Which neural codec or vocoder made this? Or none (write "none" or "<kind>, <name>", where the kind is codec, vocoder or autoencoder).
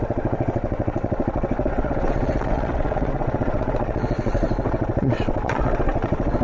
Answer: vocoder, WaveNeXt